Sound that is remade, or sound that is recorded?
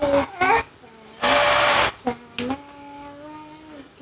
recorded